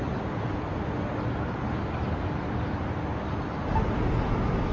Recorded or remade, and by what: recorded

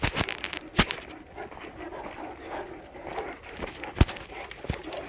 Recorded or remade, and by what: recorded